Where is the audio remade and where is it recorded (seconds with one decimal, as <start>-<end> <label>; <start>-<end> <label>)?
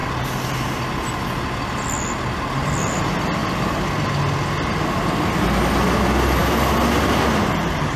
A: 0.0-8.0 recorded